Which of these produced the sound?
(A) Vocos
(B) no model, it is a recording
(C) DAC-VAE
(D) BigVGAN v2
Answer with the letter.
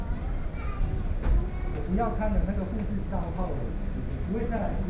B